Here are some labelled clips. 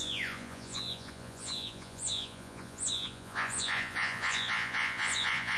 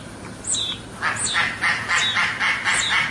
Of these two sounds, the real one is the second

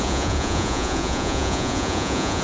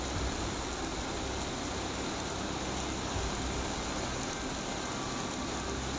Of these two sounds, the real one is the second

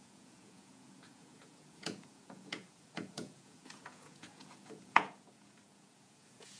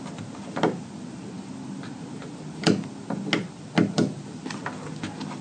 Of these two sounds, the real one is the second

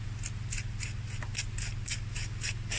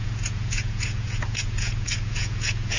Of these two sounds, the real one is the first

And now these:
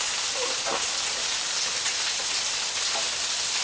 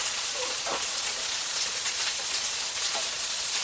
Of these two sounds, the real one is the first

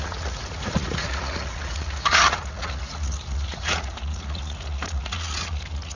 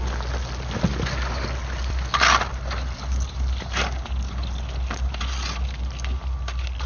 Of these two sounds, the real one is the second